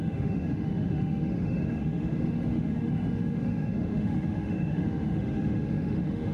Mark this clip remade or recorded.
remade